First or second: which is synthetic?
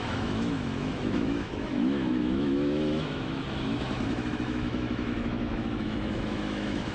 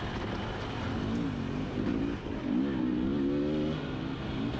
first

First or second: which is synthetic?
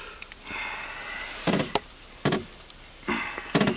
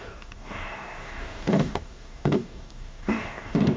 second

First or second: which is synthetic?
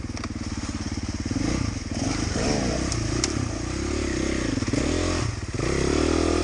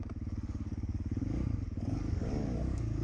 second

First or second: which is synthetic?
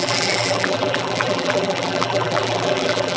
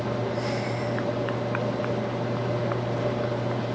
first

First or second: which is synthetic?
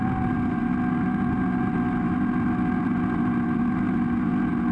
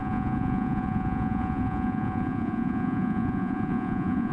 second